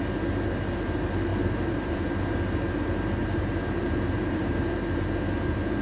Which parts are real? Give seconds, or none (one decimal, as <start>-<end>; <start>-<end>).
0.0-1.3; 2.1-3.2; 4.6-5.8